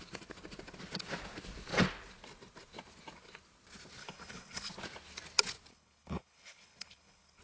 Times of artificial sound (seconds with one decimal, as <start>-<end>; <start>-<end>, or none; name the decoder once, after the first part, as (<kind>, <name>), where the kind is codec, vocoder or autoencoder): 4.0-4.7 (codec, HILCodec); 5.7-7.4